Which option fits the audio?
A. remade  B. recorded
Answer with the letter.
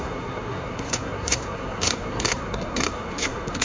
A